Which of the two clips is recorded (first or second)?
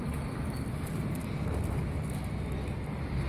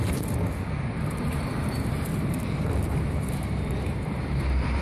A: first